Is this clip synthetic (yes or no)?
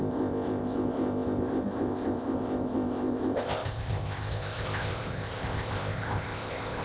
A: yes